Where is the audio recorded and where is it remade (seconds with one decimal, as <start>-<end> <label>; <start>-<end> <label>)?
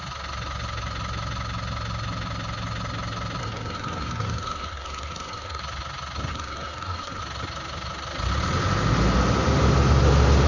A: 0.0-3.4 recorded; 3.4-5.6 remade; 5.6-6.3 recorded; 6.3-7.2 remade; 7.2-10.5 recorded